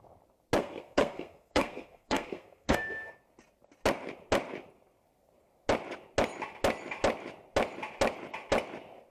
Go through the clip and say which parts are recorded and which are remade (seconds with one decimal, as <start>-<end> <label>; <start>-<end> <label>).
0.0-0.6 recorded; 0.6-3.1 remade; 3.1-9.1 recorded